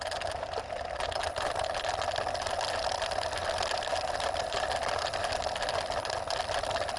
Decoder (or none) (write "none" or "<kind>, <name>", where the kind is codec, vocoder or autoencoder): none